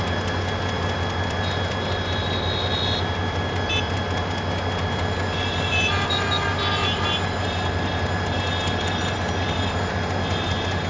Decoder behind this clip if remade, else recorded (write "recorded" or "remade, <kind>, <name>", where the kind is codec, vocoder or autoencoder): recorded